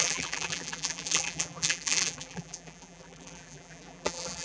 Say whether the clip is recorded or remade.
remade